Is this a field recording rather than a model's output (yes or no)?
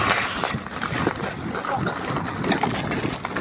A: yes